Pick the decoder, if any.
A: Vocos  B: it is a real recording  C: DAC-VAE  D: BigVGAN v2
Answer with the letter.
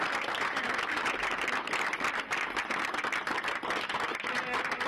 B